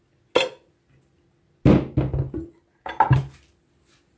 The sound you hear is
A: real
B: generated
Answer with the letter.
A